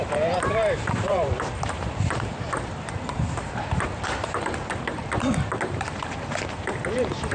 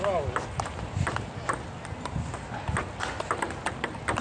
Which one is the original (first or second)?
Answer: second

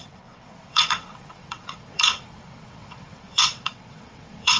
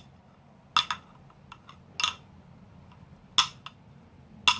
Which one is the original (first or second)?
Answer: second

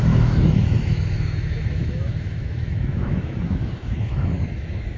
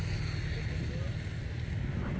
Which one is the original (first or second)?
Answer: second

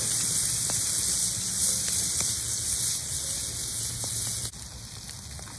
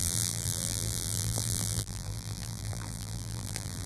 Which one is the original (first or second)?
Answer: first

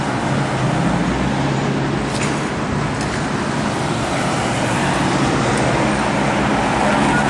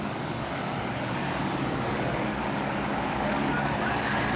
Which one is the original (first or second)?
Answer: first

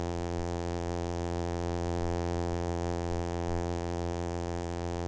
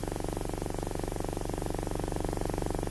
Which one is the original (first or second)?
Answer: second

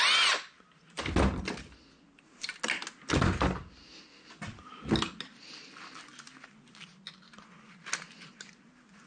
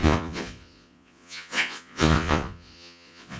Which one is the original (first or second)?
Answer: first